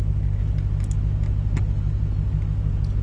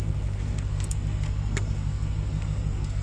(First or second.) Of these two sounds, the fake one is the second